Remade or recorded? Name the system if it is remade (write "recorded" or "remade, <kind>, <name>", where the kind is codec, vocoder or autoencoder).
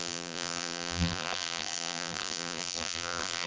remade, vocoder, BigVGAN v2